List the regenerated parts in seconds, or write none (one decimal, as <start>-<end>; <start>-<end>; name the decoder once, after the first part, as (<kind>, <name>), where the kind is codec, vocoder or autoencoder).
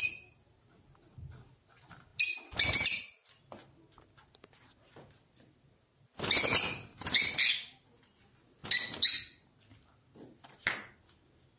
none